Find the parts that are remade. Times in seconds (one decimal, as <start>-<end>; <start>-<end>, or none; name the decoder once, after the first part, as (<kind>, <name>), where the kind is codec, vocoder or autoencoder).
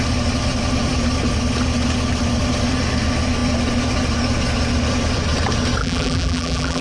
5.8-6.8 (vocoder, BigVGAN v2)